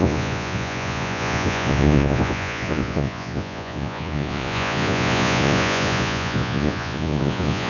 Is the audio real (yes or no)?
no